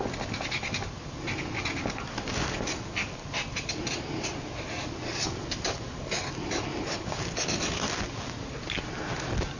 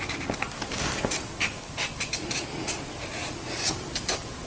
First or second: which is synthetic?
second